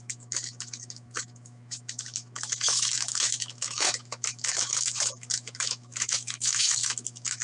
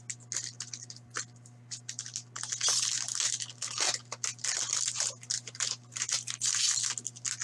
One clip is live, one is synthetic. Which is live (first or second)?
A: second